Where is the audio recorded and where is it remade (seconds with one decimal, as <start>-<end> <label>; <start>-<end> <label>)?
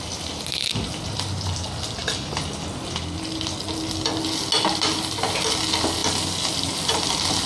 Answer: 0.0-7.5 recorded